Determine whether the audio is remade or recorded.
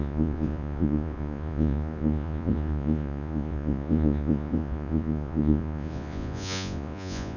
remade